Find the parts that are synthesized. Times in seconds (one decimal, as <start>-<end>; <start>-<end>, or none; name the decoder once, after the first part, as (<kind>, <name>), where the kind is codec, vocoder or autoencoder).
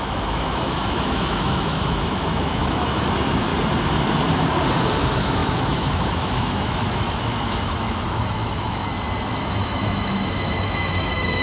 0.0-3.5 (autoencoder, DAC-VAE); 5.0-8.9; 9.4-11.4